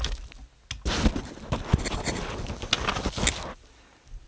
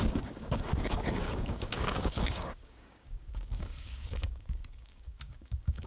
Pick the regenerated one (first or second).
second